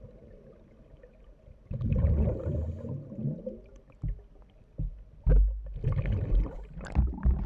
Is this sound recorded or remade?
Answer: recorded